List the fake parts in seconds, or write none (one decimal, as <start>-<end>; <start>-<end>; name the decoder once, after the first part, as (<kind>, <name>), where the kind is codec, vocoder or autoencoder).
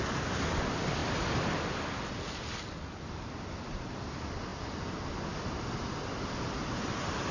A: none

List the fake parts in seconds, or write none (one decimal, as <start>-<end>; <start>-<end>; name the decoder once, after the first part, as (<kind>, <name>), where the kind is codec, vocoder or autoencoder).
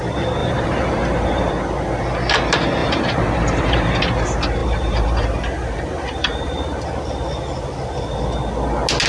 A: 0.4-1.5 (vocoder, BigVGAN v2); 2.8-4.0; 4.6-6.8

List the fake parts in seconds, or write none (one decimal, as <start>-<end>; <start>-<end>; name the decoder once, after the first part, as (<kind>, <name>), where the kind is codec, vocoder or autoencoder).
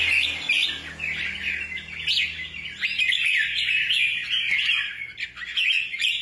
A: none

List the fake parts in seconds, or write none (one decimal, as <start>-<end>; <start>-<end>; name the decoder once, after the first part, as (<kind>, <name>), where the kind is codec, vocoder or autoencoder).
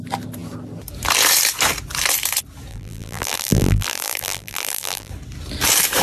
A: 2.7-5.1 (vocoder, BigVGAN v2)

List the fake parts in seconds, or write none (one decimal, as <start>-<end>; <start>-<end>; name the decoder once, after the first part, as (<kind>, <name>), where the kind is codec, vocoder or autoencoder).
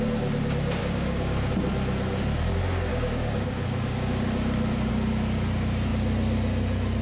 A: 0.8-1.5 (codec, DAC); 2.9-4.9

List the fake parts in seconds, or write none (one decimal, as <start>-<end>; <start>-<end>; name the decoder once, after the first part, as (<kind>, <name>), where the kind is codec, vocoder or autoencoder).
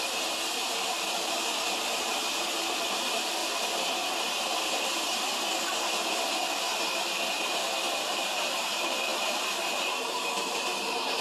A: 0.0-3.4 (vocoder, BigVGAN v2); 7.9-11.2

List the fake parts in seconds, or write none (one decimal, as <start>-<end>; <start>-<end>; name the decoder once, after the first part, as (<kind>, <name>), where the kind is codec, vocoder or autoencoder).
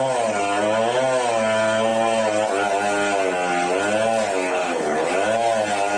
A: 4.5-5.1 (codec, HILCodec)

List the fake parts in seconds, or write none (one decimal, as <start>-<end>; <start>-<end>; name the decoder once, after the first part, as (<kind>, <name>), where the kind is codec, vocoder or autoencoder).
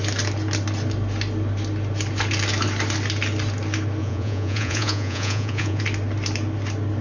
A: 4.0-5.8 (vocoder, Vocos)